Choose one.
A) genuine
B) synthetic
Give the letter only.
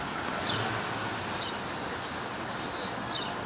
A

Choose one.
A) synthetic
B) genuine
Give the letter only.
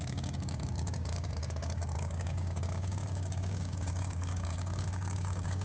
A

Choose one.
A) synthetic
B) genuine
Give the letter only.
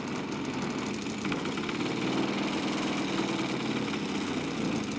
B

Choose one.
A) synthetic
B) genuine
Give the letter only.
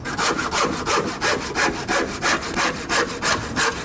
B